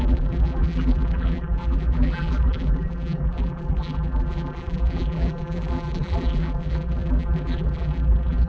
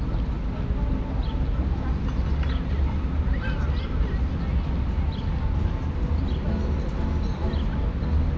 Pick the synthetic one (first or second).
first